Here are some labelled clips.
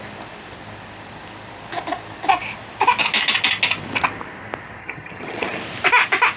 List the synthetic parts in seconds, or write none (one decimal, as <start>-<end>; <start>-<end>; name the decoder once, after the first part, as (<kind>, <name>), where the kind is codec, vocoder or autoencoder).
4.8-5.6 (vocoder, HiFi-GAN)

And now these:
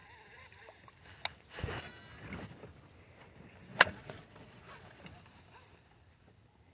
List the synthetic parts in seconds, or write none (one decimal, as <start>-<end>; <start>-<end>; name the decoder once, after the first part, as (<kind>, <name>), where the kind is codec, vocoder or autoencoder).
3.7-5.0 (vocoder, Vocos)

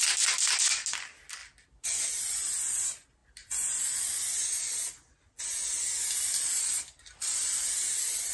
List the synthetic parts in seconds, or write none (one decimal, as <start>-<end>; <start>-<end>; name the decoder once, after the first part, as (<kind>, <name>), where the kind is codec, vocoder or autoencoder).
none

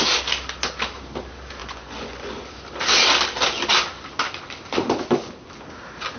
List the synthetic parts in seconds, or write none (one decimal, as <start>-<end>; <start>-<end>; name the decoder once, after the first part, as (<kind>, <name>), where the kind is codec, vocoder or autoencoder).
1.6-2.4 (vocoder, Vocos)